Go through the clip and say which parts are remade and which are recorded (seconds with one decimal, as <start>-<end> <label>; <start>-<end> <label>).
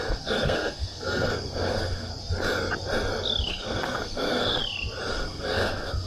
0.0-2.1 remade; 2.1-3.5 recorded; 3.5-4.6 remade; 4.6-5.1 recorded; 5.1-6.1 remade